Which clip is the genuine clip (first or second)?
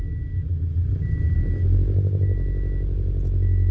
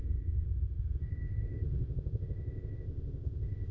first